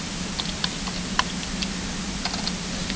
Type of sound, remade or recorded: recorded